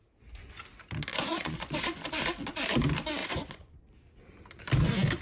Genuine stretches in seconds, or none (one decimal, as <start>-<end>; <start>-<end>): 0.0-1.1; 2.1-3.2; 3.8-5.2